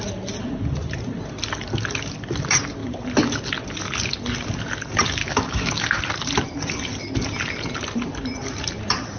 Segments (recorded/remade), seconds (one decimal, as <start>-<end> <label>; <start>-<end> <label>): 0.0-5.2 recorded; 5.2-6.0 remade; 6.0-9.2 recorded